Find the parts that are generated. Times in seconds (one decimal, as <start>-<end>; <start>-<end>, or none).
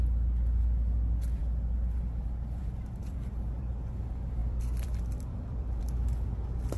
3.0-3.7; 4.4-5.8